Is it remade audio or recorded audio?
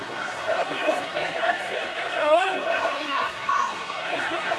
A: remade